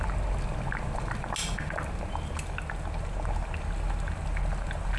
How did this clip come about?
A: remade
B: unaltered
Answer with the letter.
B